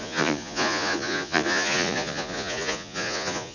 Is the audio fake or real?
fake